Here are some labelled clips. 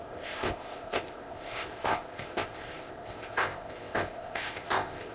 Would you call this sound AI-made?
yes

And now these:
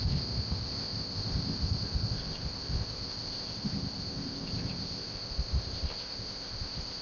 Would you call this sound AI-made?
yes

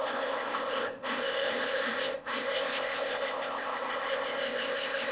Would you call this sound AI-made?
yes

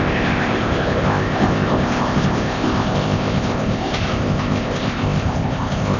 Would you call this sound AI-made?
yes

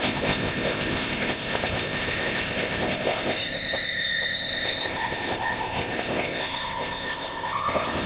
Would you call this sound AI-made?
yes